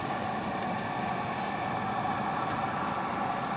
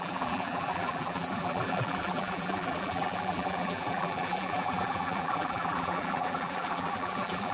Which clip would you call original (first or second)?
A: first